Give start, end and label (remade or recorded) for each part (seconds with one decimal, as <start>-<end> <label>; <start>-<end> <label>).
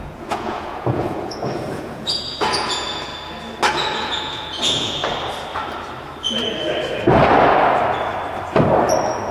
0.0-3.1 remade; 3.1-3.7 recorded; 3.7-5.0 remade; 5.0-9.3 recorded